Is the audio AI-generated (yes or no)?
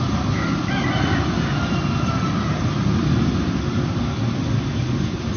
no